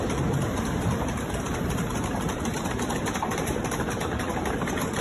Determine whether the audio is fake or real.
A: fake